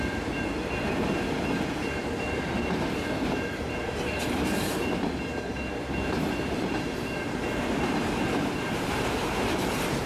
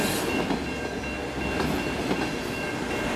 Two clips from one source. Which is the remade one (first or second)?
first